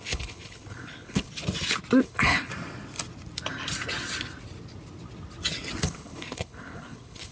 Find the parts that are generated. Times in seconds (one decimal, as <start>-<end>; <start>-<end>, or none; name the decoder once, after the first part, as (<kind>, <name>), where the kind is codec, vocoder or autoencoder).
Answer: 0.0-1.3 (codec, HILCodec); 2.0-2.5; 5.8-7.3

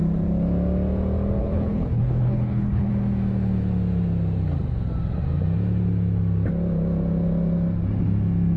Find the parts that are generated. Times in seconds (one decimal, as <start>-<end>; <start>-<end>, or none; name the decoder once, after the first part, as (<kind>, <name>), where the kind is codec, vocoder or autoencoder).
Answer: 1.4-2.9 (codec, HILCodec)

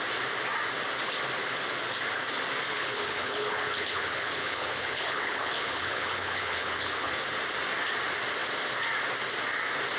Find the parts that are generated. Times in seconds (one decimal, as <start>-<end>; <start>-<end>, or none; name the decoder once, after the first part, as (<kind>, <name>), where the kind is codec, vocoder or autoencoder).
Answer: 2.7-7.1 (codec, HILCodec)